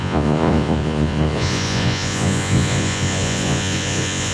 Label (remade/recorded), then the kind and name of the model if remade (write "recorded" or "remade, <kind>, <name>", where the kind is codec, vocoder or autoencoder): remade, vocoder, Vocos